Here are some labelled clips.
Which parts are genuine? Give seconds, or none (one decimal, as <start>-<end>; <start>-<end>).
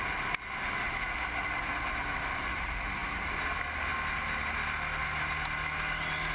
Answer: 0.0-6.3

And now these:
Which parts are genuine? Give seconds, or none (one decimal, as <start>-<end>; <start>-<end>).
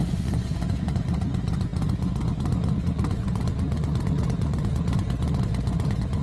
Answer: none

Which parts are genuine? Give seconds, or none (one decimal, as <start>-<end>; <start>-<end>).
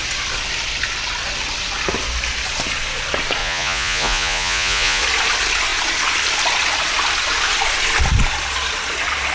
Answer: 0.0-3.4; 5.0-9.3